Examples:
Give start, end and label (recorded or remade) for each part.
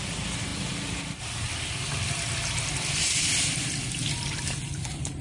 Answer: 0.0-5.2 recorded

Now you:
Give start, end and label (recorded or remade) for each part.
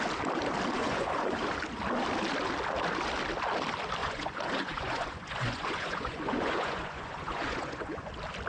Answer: 0.0-0.8 recorded; 0.8-1.4 remade; 1.4-4.0 recorded; 4.0-8.1 remade; 8.1-8.5 recorded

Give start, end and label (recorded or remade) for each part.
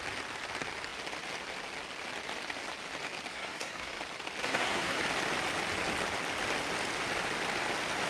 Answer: 0.0-3.3 recorded; 3.3-4.0 remade; 4.0-4.4 recorded; 4.4-5.0 remade; 5.0-8.1 recorded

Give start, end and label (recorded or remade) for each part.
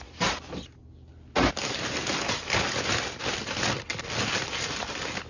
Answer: 0.0-5.3 recorded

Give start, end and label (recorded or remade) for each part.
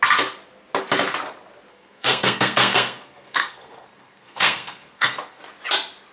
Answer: 0.0-1.7 recorded; 1.7-5.4 remade; 5.4-6.1 recorded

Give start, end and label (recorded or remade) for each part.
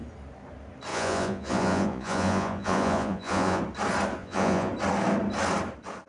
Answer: 0.0-0.9 recorded; 0.9-3.6 remade; 3.6-4.2 recorded; 4.2-4.7 remade; 4.7-6.1 recorded